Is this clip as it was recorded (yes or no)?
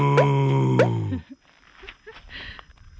yes